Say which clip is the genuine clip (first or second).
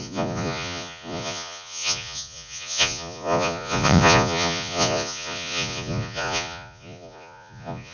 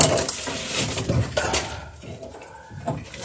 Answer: second